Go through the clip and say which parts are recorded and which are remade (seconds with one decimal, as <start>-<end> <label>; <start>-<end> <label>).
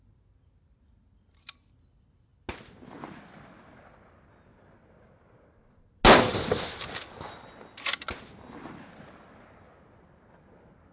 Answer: 0.0-10.9 recorded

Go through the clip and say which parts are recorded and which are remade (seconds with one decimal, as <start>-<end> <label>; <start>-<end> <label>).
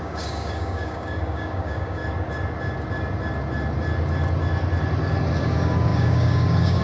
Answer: 0.0-2.0 remade; 2.0-5.4 recorded; 5.4-6.8 remade